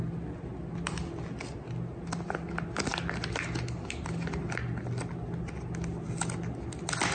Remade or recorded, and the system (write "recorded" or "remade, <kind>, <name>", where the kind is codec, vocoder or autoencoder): recorded